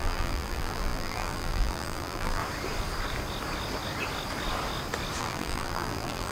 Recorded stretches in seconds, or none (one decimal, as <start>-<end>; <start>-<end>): 2.4-5.2